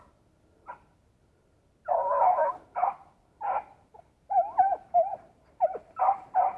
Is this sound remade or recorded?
recorded